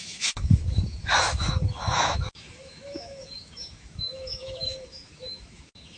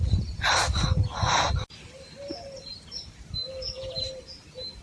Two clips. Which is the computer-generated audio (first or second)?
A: first